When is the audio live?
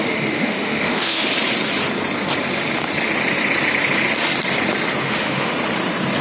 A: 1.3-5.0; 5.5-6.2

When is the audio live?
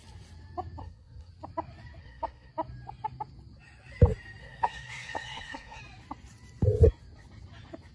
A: 0.0-0.8; 1.3-2.0; 2.5-4.4; 5.8-7.9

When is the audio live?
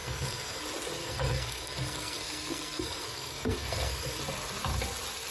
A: 0.6-1.0; 4.2-5.3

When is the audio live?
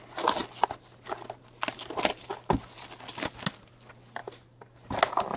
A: 0.0-5.4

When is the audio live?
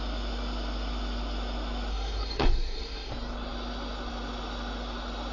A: 0.0-1.9; 3.1-5.3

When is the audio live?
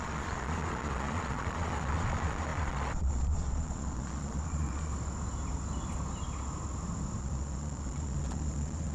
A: 4.9-7.2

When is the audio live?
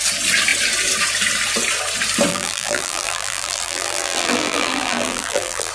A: 0.0-2.3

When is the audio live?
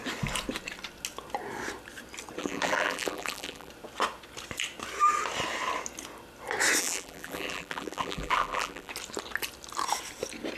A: 0.0-2.4; 3.7-6.8; 8.9-10.6